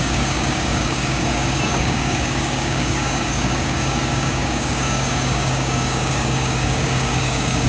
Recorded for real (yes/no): no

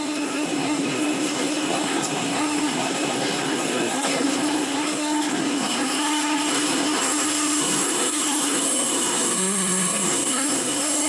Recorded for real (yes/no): no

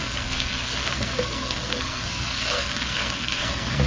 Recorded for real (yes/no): no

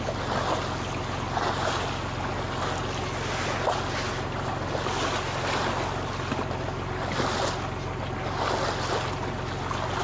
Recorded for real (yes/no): yes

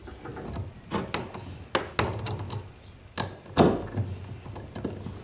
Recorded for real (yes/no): yes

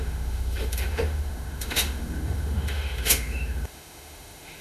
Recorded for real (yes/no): no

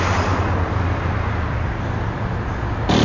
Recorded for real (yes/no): yes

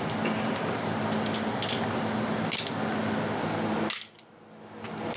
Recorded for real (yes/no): yes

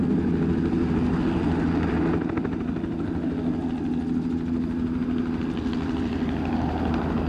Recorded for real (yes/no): yes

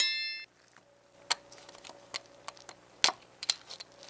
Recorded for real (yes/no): yes